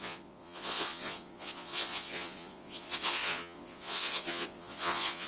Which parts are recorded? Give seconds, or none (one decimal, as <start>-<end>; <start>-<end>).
none